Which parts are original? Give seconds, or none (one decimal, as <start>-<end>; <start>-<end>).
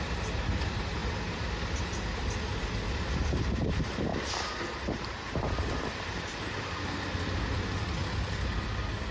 0.0-4.1; 6.9-9.1